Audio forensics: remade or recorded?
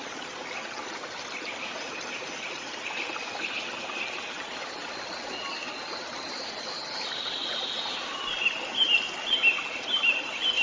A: recorded